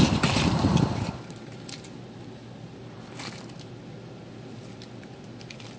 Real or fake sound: real